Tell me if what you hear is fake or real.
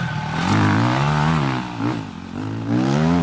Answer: real